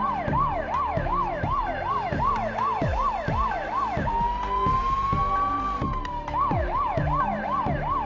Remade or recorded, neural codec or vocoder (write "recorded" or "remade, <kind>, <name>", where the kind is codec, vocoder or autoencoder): recorded